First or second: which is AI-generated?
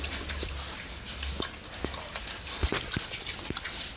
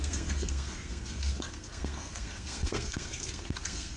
second